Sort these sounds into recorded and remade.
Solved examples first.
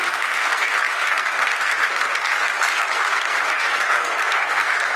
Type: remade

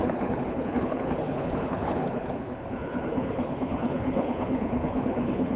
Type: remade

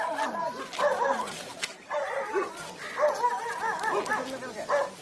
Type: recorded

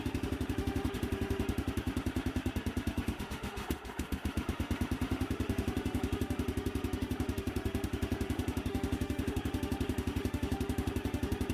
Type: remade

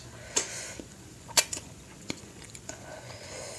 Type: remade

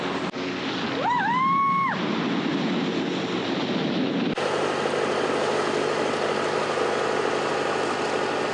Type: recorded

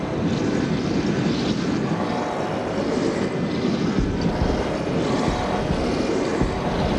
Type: recorded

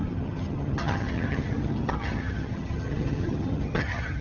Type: remade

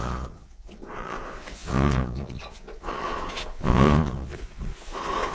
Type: remade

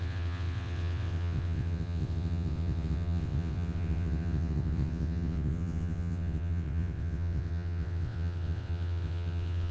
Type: remade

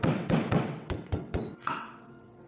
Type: remade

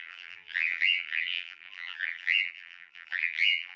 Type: remade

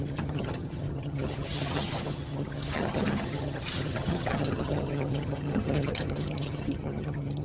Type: remade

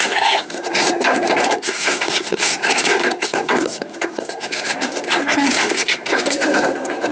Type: remade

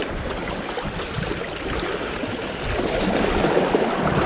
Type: recorded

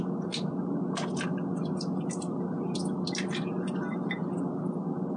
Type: recorded